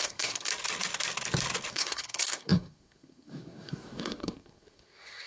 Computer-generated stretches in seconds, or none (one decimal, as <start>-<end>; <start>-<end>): 0.0-0.5; 1.7-5.3